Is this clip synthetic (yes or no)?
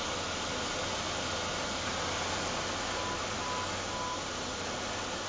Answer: no